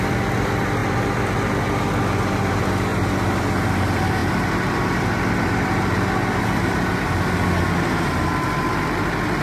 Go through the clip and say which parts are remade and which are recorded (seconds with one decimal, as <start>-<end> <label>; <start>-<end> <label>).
0.0-9.4 recorded